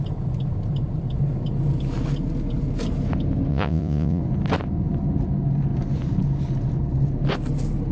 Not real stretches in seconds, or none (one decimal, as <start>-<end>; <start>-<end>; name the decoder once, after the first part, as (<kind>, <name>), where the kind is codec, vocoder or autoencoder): 3.5-4.2 (vocoder, Vocos)